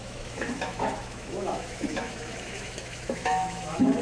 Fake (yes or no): yes